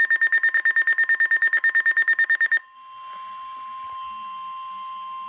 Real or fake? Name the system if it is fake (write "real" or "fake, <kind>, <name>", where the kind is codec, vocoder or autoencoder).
real